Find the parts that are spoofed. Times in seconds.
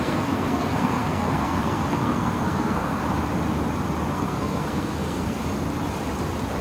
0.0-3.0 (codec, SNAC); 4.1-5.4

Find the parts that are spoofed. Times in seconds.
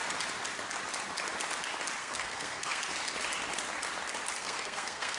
2.0-2.8 (codec, SNAC); 4.4-5.2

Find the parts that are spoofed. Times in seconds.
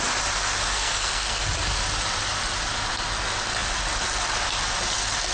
0.7-1.4 (codec, SNAC)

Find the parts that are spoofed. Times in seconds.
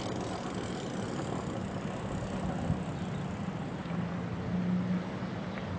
none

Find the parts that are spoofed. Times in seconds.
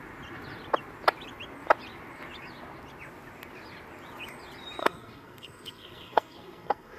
4.8-7.0 (codec, SNAC)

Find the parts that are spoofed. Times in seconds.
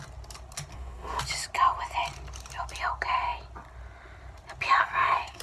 0.7-1.2 (codec, SNAC); 4.8-5.4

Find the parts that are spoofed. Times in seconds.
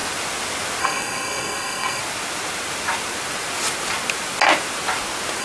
0.8-2.0 (codec, SNAC)